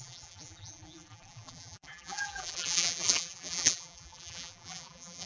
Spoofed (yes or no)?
yes